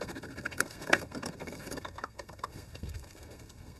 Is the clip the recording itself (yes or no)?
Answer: no